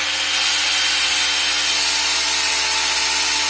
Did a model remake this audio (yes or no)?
no